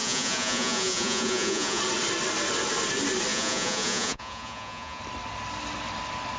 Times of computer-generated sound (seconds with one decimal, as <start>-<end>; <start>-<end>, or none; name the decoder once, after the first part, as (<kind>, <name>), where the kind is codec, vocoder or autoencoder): 0.0-1.8 (vocoder, Vocos); 3.3-5.0